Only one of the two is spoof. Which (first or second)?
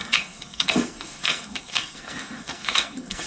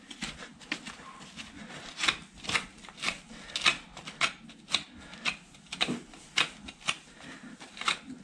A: first